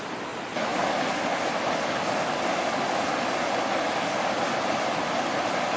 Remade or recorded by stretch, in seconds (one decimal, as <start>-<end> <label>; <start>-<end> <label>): 0.0-5.8 recorded